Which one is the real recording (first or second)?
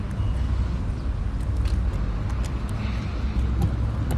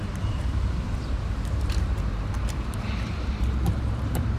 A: first